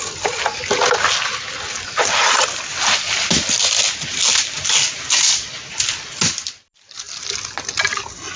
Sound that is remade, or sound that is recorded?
recorded